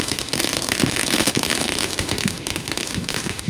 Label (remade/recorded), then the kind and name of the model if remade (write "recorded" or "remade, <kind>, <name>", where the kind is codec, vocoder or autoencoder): remade, autoencoder, DAC-VAE